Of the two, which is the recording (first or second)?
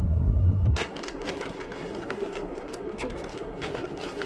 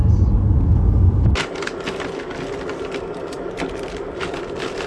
second